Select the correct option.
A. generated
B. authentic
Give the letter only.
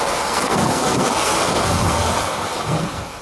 A